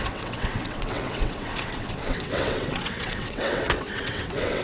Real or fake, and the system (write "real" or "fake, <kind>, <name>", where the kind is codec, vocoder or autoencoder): fake, vocoder, WaveNeXt